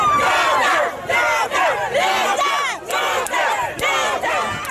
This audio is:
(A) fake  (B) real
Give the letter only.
B